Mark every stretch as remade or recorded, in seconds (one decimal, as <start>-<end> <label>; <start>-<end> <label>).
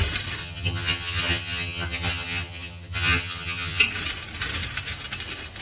0.0-0.4 recorded; 0.4-3.8 remade; 3.8-5.6 recorded